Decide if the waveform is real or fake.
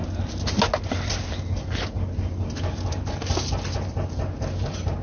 real